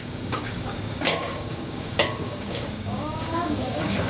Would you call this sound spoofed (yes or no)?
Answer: yes